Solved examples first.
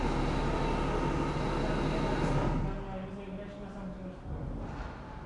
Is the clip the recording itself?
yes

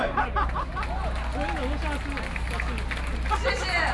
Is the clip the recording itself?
yes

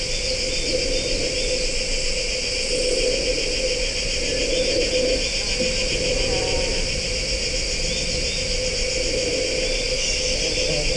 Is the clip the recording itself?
yes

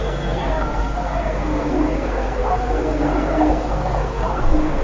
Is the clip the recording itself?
no